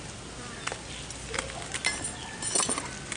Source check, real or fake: real